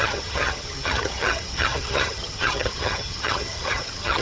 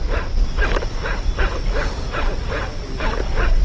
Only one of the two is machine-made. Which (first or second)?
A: first